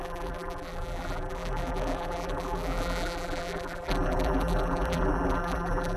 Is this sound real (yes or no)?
no